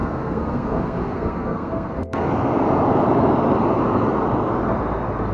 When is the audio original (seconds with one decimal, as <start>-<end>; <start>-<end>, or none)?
2.3-5.3